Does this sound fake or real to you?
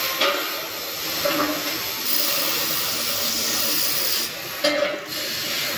real